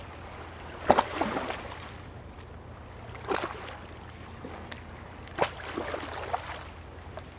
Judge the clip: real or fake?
real